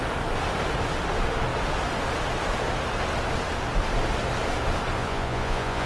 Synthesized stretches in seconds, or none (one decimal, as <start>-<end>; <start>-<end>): 5.0-5.9